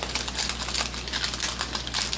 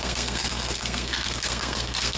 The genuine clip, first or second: first